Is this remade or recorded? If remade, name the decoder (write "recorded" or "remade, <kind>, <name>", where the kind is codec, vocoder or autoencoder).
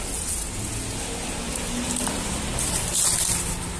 recorded